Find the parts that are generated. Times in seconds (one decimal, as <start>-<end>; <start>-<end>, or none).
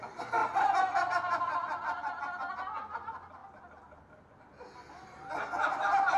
none